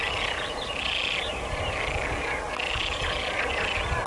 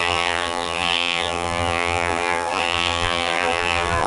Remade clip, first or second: second